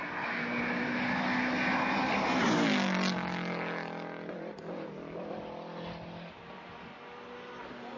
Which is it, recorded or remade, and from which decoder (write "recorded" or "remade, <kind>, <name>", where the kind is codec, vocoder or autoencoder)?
recorded